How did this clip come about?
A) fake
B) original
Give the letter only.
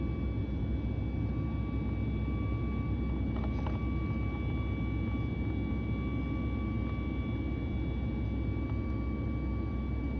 B